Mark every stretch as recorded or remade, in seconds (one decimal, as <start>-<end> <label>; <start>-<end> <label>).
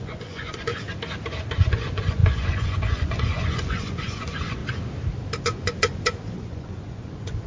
0.0-0.7 remade; 0.7-1.7 recorded; 1.7-4.6 remade; 4.6-5.4 recorded; 5.4-7.5 remade